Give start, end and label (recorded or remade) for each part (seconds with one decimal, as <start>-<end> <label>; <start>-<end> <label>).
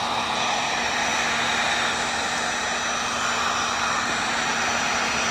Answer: 0.0-1.1 remade; 1.1-4.3 recorded; 4.3-5.3 remade